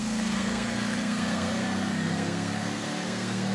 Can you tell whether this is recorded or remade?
remade